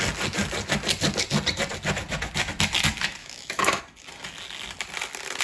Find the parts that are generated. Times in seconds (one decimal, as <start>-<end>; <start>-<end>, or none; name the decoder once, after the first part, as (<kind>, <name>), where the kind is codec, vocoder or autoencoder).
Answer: 3.2-3.8 (autoencoder, DAC-VAE)